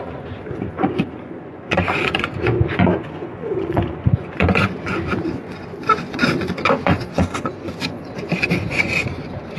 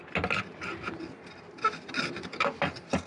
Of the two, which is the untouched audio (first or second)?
second